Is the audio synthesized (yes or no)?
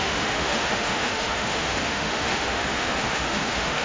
yes